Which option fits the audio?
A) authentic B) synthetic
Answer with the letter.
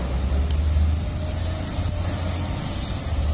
A